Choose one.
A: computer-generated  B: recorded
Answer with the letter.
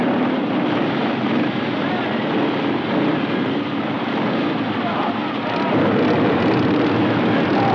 B